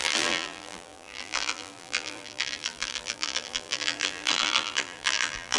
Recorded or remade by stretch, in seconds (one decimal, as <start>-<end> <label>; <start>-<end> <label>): 0.0-5.6 remade